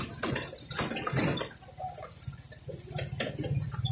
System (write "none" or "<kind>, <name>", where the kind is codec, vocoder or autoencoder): none